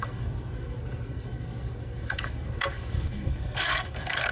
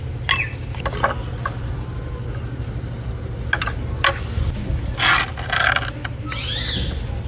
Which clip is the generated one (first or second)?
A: first